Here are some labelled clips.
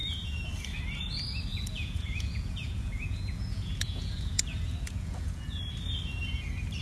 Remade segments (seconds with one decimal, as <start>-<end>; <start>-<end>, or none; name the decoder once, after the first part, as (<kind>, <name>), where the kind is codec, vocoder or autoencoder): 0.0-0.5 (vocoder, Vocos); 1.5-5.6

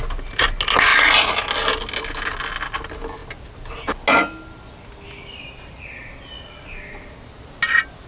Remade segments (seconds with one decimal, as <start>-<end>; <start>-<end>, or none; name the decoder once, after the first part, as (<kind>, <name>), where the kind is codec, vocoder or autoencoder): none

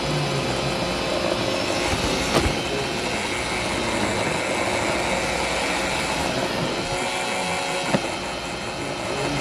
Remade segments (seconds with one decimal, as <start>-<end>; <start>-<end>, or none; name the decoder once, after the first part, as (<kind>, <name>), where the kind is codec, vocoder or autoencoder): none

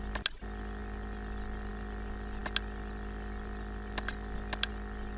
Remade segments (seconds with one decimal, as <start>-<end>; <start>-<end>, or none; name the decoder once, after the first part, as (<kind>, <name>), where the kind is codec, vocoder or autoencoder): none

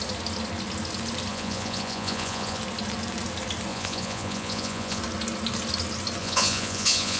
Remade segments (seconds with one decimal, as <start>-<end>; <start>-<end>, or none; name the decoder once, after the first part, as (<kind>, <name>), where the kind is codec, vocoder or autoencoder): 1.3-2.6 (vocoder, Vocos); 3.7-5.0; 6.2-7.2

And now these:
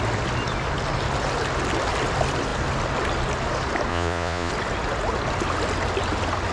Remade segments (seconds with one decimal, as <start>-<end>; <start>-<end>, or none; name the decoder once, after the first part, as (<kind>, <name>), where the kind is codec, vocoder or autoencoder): 3.9-4.5 (vocoder, Vocos)

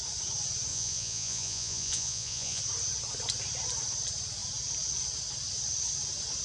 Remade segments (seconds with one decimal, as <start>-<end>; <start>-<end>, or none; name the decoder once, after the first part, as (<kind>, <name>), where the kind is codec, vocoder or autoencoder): 0.7-2.6 (vocoder, Vocos)

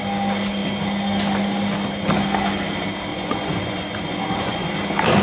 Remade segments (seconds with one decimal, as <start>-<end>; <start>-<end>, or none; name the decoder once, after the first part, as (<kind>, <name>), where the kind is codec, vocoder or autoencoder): 3.1-4.7 (vocoder, Vocos)